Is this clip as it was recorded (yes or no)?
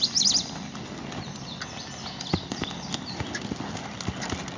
yes